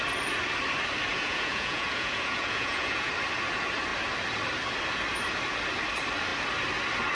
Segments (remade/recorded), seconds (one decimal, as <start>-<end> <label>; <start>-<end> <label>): 0.0-1.1 recorded; 1.1-3.1 remade; 3.1-7.1 recorded